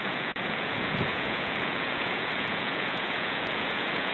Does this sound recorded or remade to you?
remade